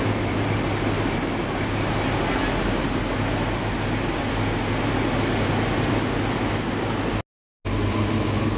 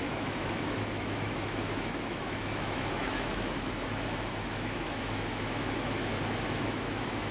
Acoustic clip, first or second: first